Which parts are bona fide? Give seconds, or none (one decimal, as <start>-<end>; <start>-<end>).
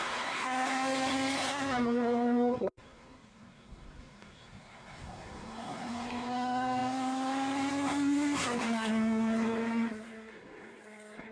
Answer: none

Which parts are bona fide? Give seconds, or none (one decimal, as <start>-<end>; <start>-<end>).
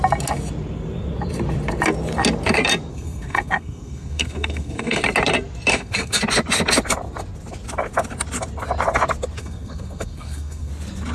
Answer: 0.0-2.9; 5.0-5.7; 6.2-9.4; 10.7-11.1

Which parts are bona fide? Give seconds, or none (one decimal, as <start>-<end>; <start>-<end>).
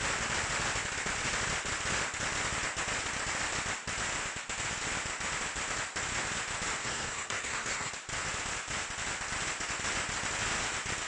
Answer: 0.0-6.8; 7.9-11.1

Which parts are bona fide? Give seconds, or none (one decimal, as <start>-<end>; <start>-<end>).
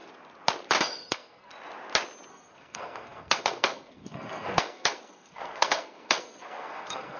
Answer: 0.0-0.8; 1.5-2.3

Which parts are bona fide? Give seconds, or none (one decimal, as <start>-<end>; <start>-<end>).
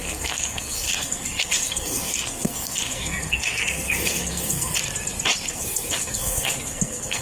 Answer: 4.7-5.5